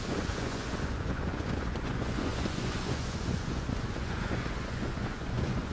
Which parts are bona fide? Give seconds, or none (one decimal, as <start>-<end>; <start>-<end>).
none